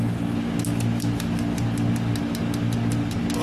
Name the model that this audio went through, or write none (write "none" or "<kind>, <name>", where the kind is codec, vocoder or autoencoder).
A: none